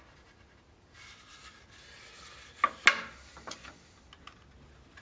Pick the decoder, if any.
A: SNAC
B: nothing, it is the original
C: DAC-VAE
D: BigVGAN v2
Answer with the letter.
B